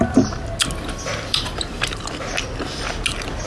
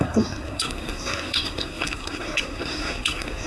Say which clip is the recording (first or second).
first